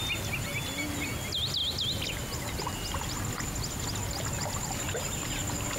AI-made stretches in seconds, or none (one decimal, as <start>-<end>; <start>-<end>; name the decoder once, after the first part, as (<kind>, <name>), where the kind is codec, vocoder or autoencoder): none